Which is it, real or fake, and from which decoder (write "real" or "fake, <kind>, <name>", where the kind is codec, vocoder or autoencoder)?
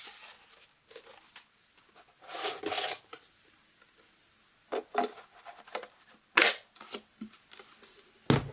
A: real